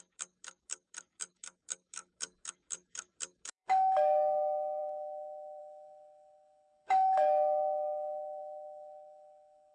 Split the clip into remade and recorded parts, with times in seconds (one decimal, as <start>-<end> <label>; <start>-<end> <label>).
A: 0.0-9.7 remade